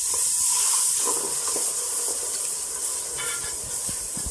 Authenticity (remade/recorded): recorded